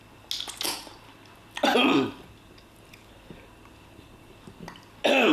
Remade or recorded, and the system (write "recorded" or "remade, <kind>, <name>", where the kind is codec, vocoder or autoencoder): recorded